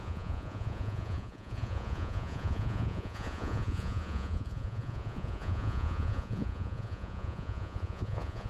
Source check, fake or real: fake